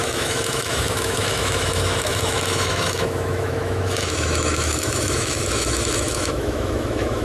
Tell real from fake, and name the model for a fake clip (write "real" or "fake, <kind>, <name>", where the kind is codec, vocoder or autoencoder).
fake, autoencoder, DAC-VAE